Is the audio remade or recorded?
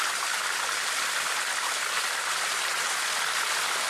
remade